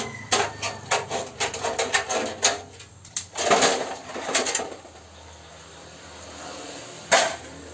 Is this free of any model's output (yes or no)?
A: yes